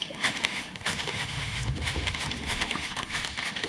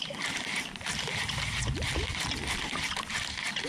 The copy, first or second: first